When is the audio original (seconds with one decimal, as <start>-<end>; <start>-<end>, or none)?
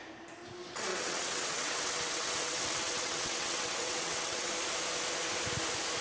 0.0-0.9; 4.5-6.0